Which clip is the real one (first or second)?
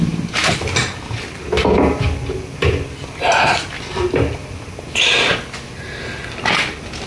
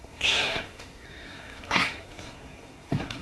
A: first